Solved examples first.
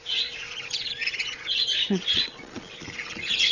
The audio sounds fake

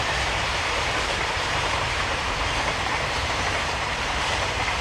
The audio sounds fake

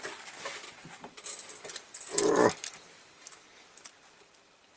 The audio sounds real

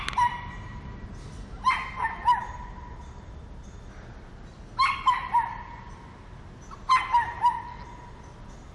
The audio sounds real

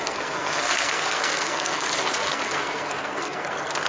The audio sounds fake